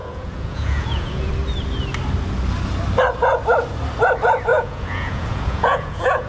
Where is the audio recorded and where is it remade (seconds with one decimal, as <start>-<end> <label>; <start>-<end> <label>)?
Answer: 0.0-1.3 remade; 1.3-4.5 recorded; 4.5-6.3 remade